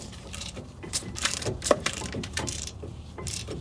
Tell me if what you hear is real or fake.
fake